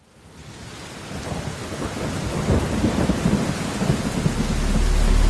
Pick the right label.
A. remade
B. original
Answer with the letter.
B